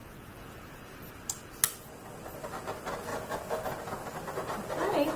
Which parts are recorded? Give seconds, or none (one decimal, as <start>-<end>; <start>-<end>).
1.0-3.1; 3.6-5.2